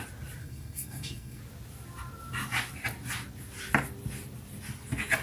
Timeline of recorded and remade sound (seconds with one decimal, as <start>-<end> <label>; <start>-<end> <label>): 0.0-0.4 recorded; 0.4-1.4 remade; 1.4-5.2 recorded